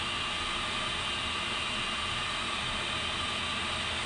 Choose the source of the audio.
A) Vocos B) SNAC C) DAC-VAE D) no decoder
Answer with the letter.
D